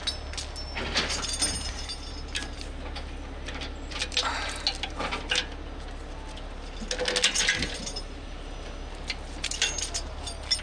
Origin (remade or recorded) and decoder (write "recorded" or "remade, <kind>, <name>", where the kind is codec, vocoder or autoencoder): recorded